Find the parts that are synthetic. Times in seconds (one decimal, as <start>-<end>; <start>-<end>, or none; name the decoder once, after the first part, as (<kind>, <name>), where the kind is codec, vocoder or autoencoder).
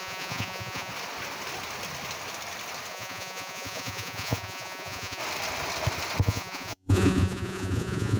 0.0-0.9 (vocoder, Vocos); 2.9-5.2; 6.2-8.2